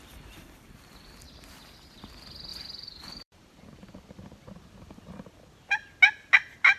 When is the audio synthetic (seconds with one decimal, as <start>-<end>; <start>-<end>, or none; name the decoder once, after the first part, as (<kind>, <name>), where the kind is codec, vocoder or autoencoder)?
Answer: 2.5-3.9 (vocoder, BigVGAN v2)